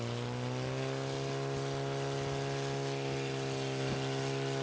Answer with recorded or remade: recorded